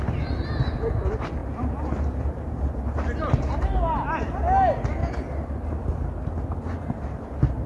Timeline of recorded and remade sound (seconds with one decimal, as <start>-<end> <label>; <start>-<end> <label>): 0.0-1.4 recorded; 1.4-4.4 remade; 4.4-5.0 recorded; 5.0-5.7 remade; 5.7-7.7 recorded